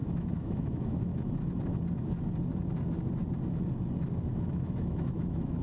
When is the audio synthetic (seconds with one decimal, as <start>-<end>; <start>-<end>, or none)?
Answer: 0.0-1.1; 4.5-5.6